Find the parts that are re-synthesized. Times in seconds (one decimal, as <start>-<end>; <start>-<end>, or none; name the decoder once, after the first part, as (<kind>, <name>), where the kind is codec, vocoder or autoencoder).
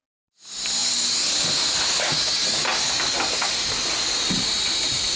2.7-3.5 (vocoder, BigVGAN v2)